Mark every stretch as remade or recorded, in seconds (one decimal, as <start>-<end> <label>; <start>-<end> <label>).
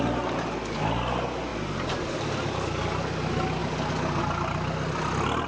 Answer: 0.0-5.5 recorded